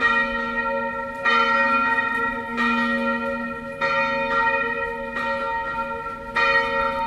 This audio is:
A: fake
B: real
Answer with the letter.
B